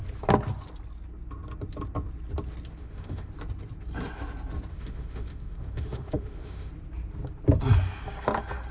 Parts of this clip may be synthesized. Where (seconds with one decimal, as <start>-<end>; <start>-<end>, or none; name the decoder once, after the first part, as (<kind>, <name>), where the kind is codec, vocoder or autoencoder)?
2.8-3.3 (autoencoder, DAC-VAE); 4.7-6.7